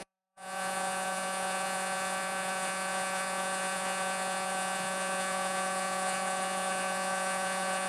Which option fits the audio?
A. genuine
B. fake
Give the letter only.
B